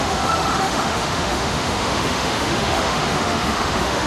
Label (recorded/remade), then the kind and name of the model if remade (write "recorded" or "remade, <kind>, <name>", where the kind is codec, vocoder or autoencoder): remade, autoencoder, DAC-VAE